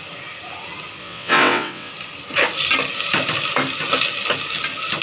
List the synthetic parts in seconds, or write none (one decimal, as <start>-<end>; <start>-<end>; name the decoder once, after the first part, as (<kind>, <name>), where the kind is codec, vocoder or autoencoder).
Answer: 1.0-1.9 (vocoder, WaveNeXt)